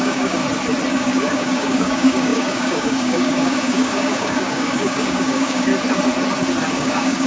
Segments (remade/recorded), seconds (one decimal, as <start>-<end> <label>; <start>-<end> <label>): 0.0-0.4 remade; 0.4-0.9 recorded; 0.9-5.7 remade; 5.7-6.7 recorded; 6.7-7.3 remade

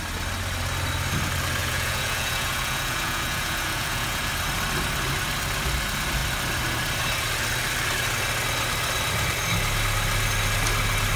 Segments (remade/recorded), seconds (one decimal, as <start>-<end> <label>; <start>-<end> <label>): 0.0-1.6 recorded; 1.6-4.3 remade; 4.3-11.2 recorded

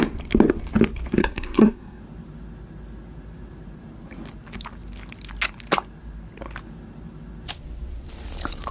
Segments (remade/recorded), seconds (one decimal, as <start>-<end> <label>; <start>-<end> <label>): 0.0-1.2 recorded; 1.2-2.0 remade; 2.0-8.7 recorded

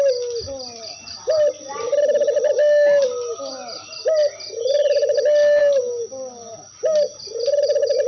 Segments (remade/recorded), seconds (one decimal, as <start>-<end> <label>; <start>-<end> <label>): 0.0-8.1 recorded

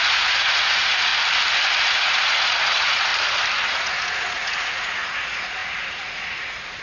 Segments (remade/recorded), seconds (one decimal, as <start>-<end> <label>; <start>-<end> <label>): 0.0-1.1 remade; 1.1-1.8 recorded; 1.8-3.1 remade; 3.1-3.7 recorded; 3.7-6.8 remade